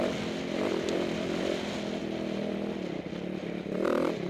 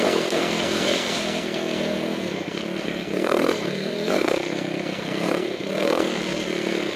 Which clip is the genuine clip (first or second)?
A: first